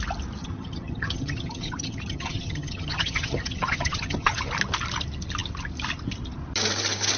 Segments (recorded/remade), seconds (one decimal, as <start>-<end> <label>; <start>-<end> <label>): 0.0-0.4 recorded; 0.4-4.4 remade; 4.4-7.2 recorded